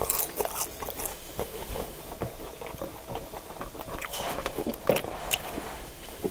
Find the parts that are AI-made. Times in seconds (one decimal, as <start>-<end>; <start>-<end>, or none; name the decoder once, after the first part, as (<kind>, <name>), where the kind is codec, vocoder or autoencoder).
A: 1.1-2.0 (autoencoder, DAC-VAE); 4.1-4.7; 5.2-6.3